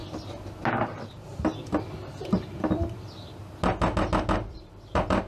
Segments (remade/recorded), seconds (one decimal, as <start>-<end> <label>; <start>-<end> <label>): 0.0-0.8 recorded; 0.8-1.3 remade; 1.3-4.5 recorded; 4.5-5.3 remade